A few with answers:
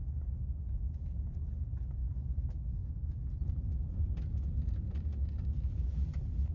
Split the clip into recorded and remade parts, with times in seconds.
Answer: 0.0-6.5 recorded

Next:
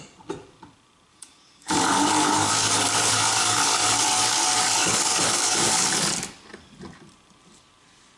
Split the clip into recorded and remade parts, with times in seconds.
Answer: 0.0-1.1 recorded; 1.1-5.9 remade; 5.9-8.2 recorded

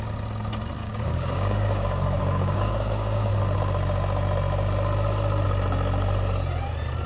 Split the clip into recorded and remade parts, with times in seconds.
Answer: 0.0-0.8 recorded; 0.8-3.3 remade; 3.3-7.1 recorded

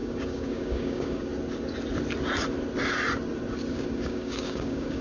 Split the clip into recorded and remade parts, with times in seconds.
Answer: 0.0-1.3 remade; 1.3-3.7 recorded; 3.7-5.0 remade

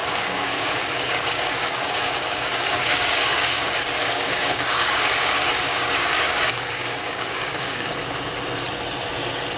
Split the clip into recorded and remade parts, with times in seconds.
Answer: 0.0-3.6 remade; 3.6-4.0 recorded; 4.0-7.9 remade; 7.9-9.6 recorded

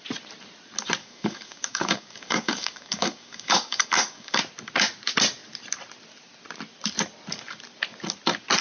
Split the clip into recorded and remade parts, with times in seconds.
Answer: 0.0-1.0 recorded; 1.0-4.4 remade; 4.4-8.6 recorded

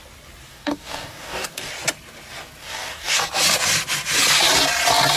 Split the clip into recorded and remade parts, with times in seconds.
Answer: 0.0-0.5 recorded; 0.5-1.7 remade; 1.7-2.6 recorded; 2.6-3.2 remade; 3.2-5.2 recorded

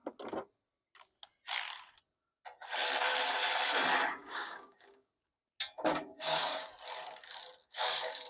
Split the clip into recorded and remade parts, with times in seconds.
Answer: 0.0-4.2 recorded; 4.2-5.1 remade; 5.1-5.9 recorded; 5.9-6.7 remade; 6.7-7.6 recorded; 7.6-8.3 remade